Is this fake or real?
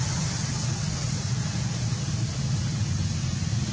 real